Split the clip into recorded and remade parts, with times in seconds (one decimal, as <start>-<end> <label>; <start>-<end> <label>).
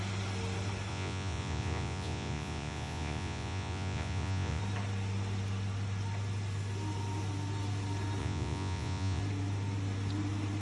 0.0-0.9 recorded; 0.9-4.6 remade; 4.6-8.2 recorded; 8.2-9.2 remade; 9.2-10.6 recorded